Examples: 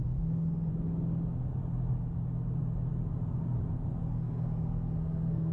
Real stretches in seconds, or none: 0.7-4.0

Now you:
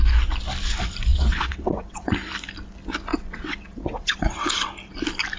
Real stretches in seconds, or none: 0.0-1.1; 2.1-3.1; 4.5-5.4

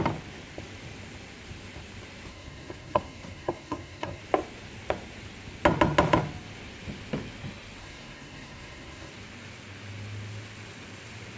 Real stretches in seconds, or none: 0.0-2.3; 4.2-7.8; 9.1-11.4